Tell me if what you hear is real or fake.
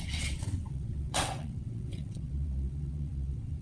fake